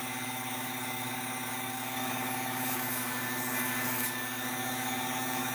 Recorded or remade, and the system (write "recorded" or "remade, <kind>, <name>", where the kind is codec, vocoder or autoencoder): remade, codec, DAC